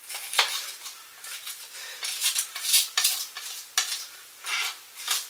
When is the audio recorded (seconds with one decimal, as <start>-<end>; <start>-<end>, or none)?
1.6-2.2; 3.3-3.9; 4.5-5.3